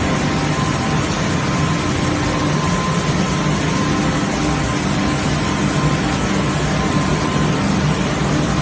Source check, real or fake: real